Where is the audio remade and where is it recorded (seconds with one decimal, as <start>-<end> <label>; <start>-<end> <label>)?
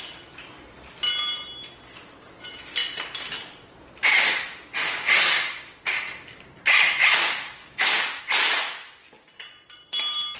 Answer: 0.0-4.3 recorded; 4.3-5.9 remade; 5.9-7.6 recorded; 7.6-8.2 remade; 8.2-10.4 recorded